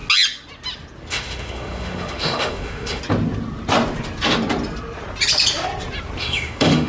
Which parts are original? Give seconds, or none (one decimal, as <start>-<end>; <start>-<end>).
0.0-1.1; 3.0-6.2